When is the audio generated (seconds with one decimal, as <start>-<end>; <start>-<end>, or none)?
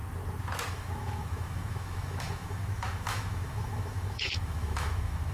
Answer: 0.7-5.3